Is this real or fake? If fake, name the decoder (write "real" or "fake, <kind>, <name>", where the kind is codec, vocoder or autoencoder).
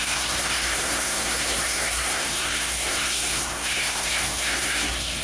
fake, codec, SNAC